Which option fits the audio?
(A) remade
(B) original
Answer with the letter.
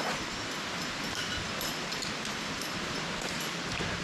B